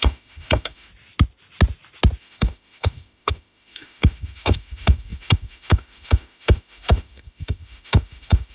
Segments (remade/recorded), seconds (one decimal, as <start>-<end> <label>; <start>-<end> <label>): 0.0-0.9 remade; 0.9-2.2 recorded; 2.2-8.5 remade